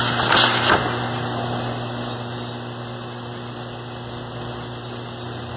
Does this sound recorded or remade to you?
recorded